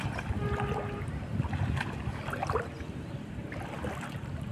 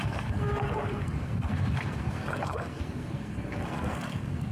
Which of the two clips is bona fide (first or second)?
first